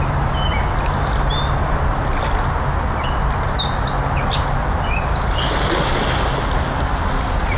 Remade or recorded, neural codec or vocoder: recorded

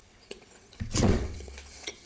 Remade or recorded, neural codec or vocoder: remade, vocoder, WaveNeXt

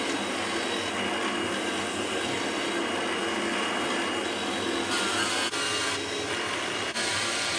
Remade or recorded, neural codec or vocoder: recorded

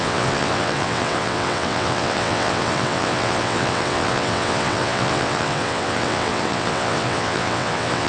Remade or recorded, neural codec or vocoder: remade, vocoder, WaveNeXt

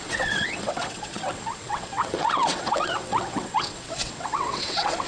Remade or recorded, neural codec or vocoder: remade, vocoder, WaveNeXt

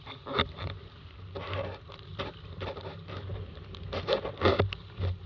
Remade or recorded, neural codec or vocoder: recorded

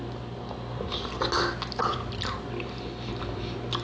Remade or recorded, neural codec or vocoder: recorded